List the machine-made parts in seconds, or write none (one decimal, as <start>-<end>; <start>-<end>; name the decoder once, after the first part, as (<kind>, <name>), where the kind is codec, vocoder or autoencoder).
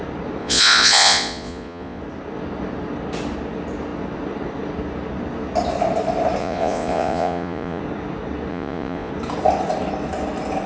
0.4-2.0 (vocoder, Vocos); 6.4-7.8; 8.5-9.1